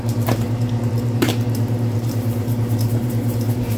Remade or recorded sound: remade